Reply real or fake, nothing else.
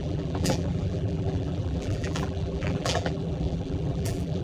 fake